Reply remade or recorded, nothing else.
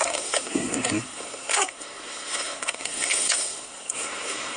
remade